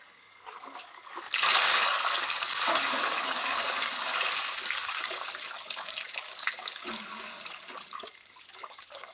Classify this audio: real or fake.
fake